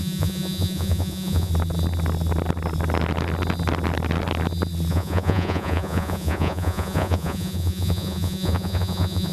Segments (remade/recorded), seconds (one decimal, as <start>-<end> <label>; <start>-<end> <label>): 0.0-1.5 remade; 1.5-4.9 recorded; 4.9-9.3 remade